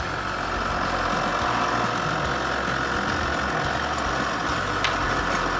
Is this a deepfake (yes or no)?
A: no